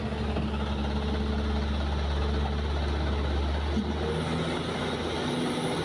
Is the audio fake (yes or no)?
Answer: no